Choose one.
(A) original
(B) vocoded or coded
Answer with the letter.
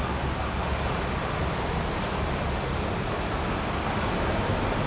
A